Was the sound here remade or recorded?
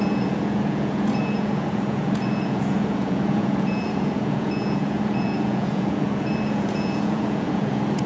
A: remade